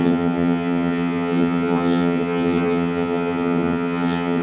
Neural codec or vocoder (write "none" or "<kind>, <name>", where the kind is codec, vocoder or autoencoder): vocoder, HiFi-GAN